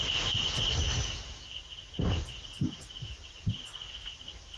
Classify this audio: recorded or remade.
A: recorded